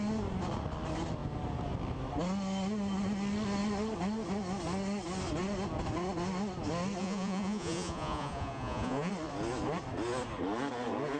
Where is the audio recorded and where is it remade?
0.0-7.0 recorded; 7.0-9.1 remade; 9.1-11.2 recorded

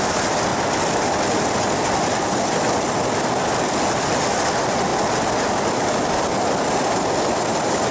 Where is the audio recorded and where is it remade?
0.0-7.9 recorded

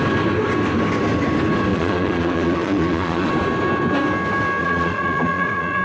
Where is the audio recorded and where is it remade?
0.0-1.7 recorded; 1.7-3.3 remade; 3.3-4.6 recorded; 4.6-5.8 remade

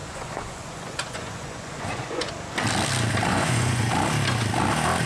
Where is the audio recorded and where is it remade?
0.0-2.3 remade; 2.3-3.3 recorded; 3.3-3.9 remade; 3.9-5.1 recorded

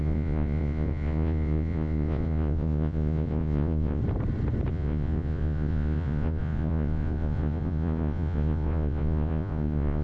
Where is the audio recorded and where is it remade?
0.0-4.0 remade; 4.0-4.7 recorded; 4.7-10.0 remade